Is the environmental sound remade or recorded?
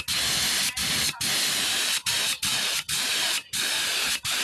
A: recorded